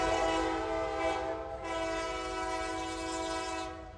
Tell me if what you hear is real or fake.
real